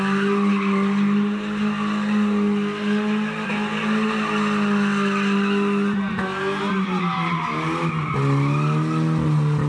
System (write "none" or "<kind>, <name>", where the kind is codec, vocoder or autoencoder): none